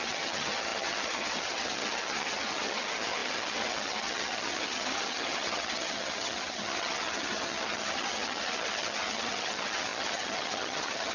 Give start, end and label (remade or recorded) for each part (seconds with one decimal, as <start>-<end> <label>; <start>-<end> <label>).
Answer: 0.0-11.1 remade